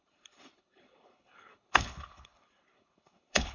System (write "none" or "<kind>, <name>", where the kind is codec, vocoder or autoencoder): codec, HILCodec